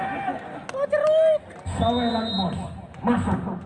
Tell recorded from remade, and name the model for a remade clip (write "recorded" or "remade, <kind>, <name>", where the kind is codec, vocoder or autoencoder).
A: recorded